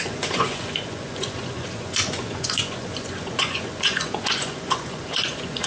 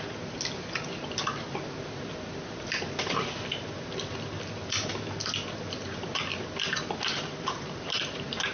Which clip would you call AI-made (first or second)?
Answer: first